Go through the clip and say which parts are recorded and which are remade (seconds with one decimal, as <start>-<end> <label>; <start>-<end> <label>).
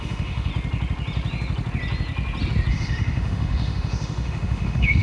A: 0.0-0.5 remade; 0.5-2.7 recorded; 2.7-5.0 remade